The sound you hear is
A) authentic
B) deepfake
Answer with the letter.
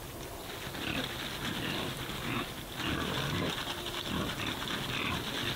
A